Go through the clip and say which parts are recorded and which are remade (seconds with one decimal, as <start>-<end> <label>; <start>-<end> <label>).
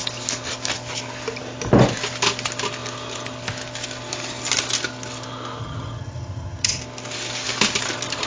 0.0-5.6 recorded; 5.6-6.8 remade; 6.8-8.3 recorded